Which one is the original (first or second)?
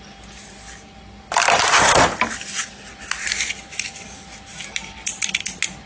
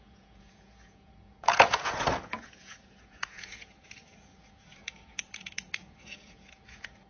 first